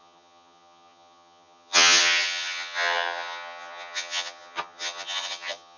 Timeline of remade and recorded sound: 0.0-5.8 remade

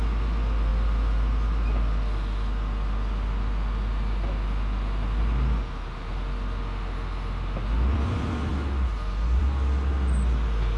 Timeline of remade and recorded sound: 0.0-10.8 recorded

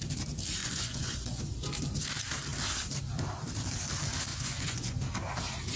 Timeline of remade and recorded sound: 0.0-0.6 recorded; 0.6-1.4 remade; 1.4-4.3 recorded; 4.3-5.0 remade; 5.0-5.8 recorded

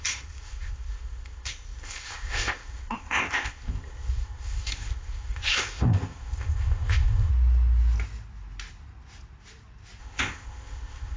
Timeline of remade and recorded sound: 0.0-7.3 remade; 7.3-10.0 recorded; 10.0-11.2 remade